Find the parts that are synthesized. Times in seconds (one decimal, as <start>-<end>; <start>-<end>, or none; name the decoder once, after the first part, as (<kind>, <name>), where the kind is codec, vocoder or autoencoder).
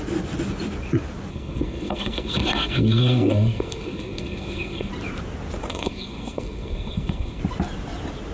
1.3-4.9 (codec, SNAC); 5.7-7.4